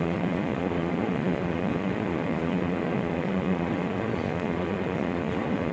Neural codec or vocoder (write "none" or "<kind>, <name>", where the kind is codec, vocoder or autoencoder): vocoder, Vocos